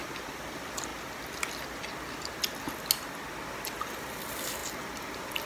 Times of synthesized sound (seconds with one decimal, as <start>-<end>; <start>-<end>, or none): 0.0-0.9; 3.5-5.5